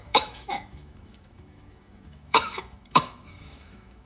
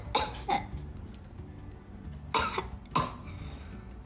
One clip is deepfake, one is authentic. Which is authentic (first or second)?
second